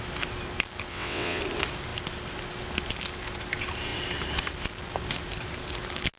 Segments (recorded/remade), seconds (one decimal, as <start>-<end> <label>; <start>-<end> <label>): 0.0-0.9 recorded; 0.9-1.4 remade; 1.4-6.2 recorded